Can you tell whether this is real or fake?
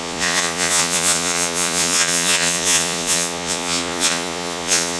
fake